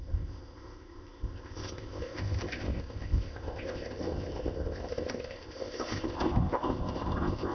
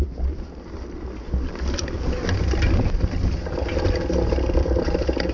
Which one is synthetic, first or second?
first